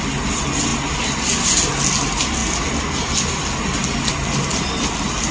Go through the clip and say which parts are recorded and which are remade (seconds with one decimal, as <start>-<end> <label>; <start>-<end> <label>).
0.0-5.3 recorded